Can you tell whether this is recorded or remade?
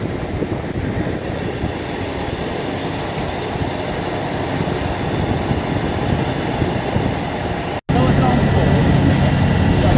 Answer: recorded